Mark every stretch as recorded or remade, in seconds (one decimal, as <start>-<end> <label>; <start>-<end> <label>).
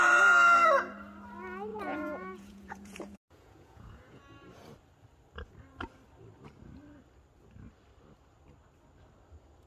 0.0-1.7 recorded; 1.7-4.2 remade; 4.2-9.7 recorded